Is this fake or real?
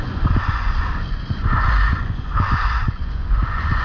fake